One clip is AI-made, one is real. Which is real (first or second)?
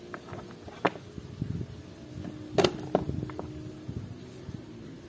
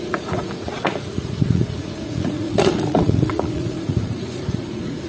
first